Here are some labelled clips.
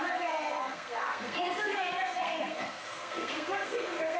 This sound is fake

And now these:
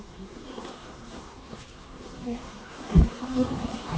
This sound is fake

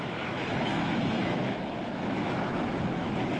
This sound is fake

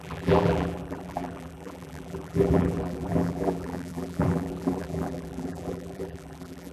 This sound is fake